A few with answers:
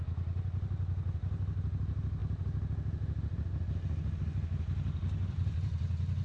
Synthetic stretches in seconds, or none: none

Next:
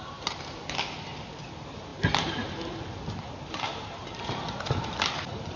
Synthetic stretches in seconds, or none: none

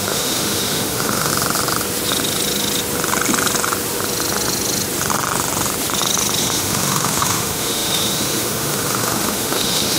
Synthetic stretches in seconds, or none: 0.0-1.3 (autoencoder, DAC-VAE); 6.4-10.0

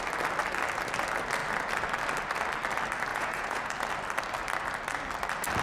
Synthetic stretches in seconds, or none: 3.1-3.7 (vocoder, Vocos)

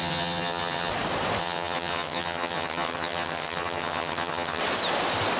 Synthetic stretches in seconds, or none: 0.0-0.9 (vocoder, HiFi-GAN); 1.4-4.6

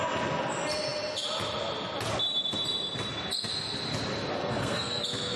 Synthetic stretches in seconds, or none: 4.4-5.0 (codec, SNAC)

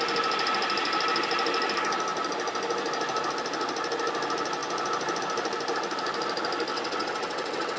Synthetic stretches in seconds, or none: 6.7-7.8 (vocoder, WaveNeXt)

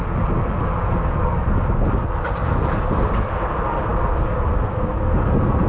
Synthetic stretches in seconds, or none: none